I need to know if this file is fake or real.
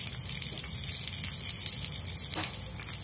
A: real